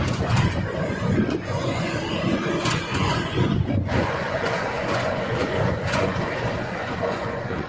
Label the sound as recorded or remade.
remade